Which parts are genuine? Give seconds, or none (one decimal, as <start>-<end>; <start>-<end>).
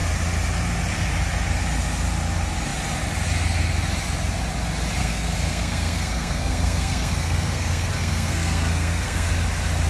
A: 0.0-5.0; 9.3-9.9